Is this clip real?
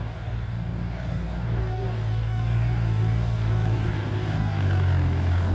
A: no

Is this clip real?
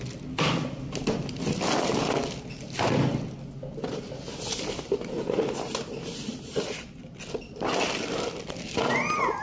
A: yes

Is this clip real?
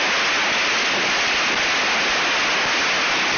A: yes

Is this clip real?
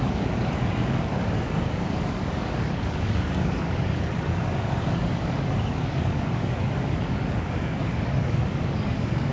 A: no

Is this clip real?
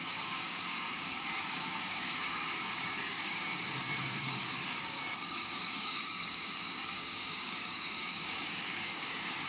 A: no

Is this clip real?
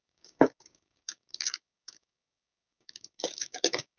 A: no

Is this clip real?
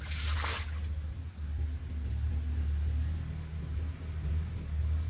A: yes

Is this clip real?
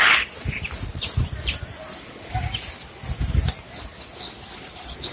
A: yes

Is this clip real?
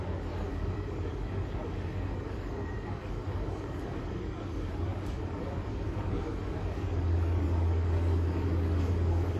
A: no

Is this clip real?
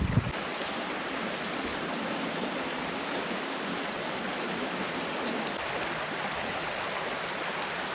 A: yes